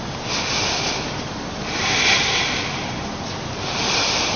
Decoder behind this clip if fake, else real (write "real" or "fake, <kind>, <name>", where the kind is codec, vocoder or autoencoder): real